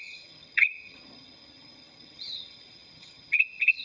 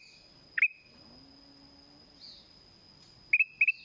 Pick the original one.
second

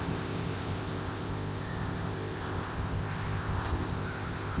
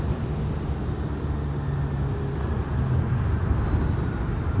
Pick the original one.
second